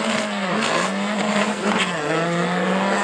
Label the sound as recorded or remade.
remade